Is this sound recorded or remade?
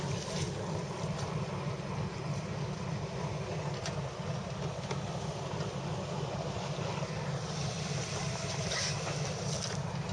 recorded